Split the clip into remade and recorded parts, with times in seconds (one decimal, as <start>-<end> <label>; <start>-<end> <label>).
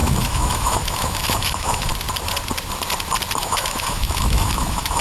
0.0-1.9 remade; 1.9-3.4 recorded; 3.4-5.0 remade